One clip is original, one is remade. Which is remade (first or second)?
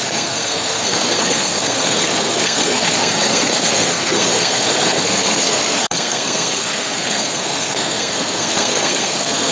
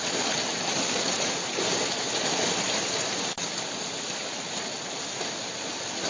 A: first